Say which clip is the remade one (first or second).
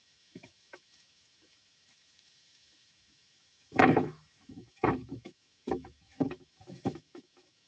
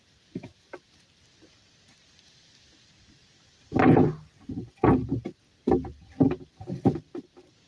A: first